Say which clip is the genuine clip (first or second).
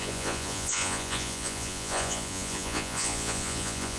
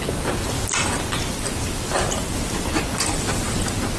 second